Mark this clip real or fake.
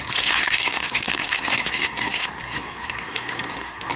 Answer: fake